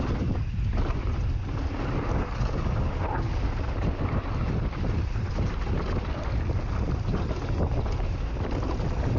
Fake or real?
real